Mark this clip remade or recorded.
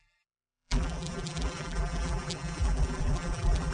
remade